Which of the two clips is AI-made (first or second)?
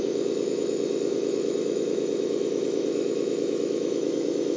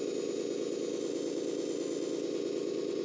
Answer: first